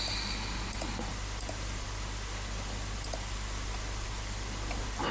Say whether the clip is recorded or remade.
recorded